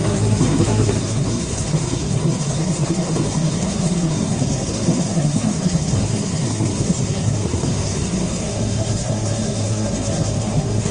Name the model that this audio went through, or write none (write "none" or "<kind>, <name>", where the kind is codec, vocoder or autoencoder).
codec, SNAC